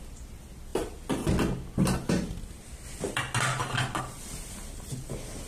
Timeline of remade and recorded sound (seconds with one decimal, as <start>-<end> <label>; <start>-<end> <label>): 0.0-5.5 recorded